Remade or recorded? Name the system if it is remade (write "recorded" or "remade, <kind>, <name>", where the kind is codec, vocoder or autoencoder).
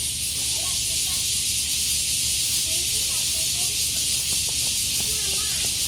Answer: recorded